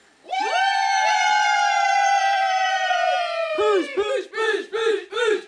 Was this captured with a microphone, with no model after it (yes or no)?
no